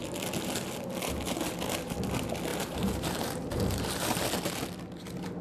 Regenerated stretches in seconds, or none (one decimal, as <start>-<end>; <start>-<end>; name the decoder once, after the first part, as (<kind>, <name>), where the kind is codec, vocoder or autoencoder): 2.5-4.2 (vocoder, BigVGAN v2)